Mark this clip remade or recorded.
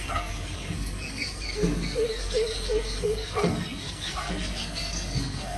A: remade